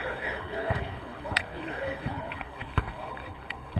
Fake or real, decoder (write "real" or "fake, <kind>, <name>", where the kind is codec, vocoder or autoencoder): fake, codec, HILCodec